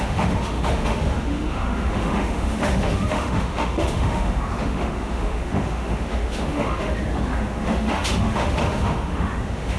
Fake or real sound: fake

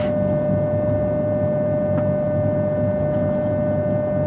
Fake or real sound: real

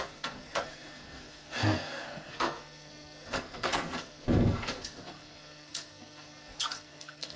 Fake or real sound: fake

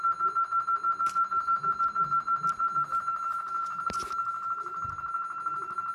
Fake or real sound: real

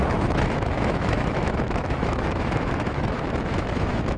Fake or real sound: fake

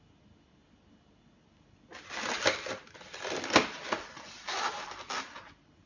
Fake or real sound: real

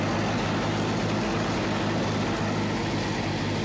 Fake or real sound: real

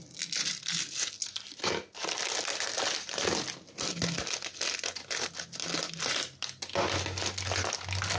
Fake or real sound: real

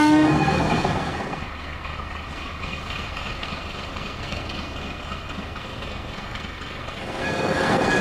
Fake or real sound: fake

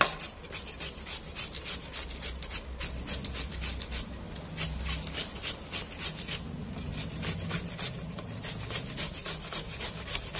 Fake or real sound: real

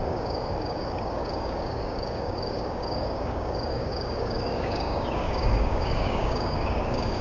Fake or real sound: fake